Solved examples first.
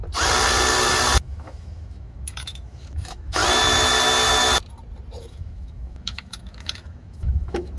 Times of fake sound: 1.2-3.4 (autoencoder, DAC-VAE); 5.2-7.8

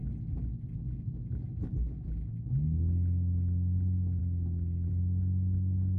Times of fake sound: none